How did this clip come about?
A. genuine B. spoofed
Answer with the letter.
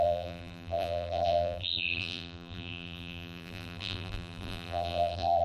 B